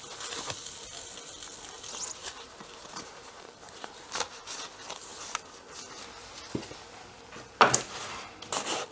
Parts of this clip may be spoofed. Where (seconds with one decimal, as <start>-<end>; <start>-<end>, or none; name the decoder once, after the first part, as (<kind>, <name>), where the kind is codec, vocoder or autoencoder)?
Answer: 2.2-4.0 (vocoder, BigVGAN v2)